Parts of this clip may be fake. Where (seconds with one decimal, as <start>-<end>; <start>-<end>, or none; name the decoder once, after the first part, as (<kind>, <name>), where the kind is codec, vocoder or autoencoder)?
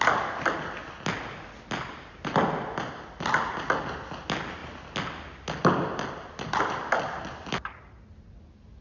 none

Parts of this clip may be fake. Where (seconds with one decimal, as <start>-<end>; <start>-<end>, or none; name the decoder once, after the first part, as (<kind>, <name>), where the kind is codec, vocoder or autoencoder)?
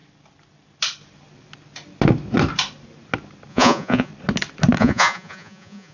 3.5-4.1 (vocoder, Vocos); 4.8-5.9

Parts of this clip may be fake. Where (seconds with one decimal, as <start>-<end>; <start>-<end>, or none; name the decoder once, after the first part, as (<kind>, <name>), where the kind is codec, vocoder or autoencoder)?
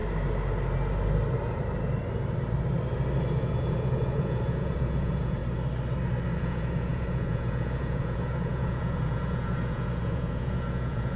3.3-5.4 (vocoder, Vocos); 6.4-11.2